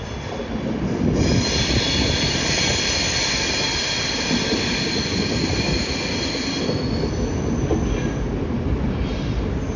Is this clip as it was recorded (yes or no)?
yes